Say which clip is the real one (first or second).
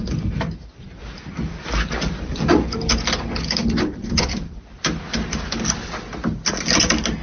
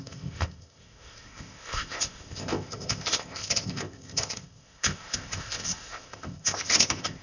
first